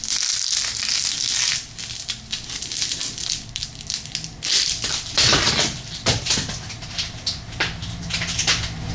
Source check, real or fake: real